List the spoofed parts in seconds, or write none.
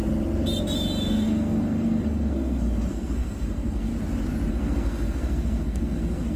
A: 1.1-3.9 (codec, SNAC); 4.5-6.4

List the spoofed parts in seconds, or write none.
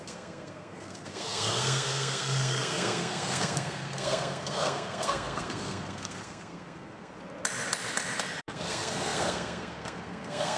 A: 0.0-7.1 (codec, SNAC); 8.4-10.6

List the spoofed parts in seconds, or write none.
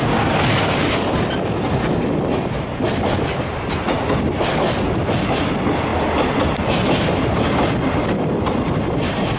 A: none